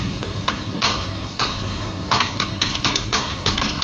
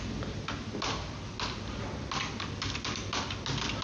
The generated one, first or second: first